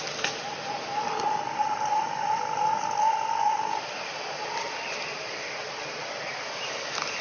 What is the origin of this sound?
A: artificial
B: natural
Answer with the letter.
B